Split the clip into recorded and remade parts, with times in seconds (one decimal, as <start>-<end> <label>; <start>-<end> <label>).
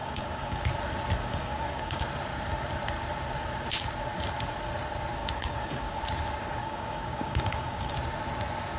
0.0-0.6 remade; 0.6-1.2 recorded; 1.2-2.0 remade; 2.0-5.2 recorded; 5.2-6.0 remade; 6.0-6.6 recorded; 6.6-7.9 remade; 7.9-8.8 recorded